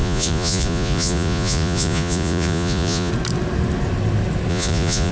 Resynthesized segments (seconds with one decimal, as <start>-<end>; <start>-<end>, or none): 0.0-3.1; 4.5-5.1

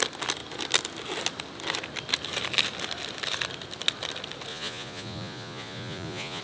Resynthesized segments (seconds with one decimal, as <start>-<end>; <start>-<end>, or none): 4.5-6.4

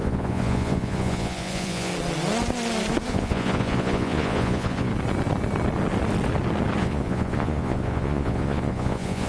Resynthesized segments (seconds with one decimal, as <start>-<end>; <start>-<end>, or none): 0.0-1.9; 3.1-4.9; 6.8-9.3